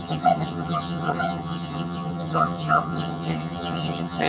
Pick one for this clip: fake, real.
fake